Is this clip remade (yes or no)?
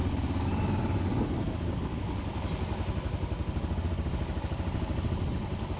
no